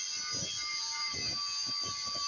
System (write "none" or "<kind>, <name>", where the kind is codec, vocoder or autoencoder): none